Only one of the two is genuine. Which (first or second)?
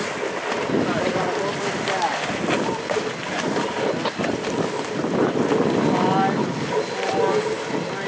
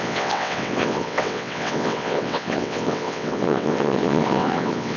first